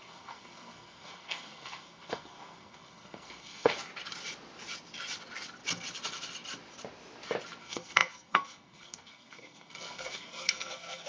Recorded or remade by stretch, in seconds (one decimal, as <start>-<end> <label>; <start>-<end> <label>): 0.0-3.9 remade; 3.9-7.6 recorded; 7.6-11.1 remade